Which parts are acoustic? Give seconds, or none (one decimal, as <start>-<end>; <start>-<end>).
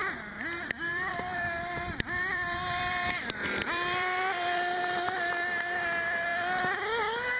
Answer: 0.0-0.9; 5.3-7.4